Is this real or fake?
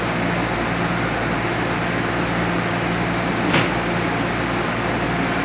real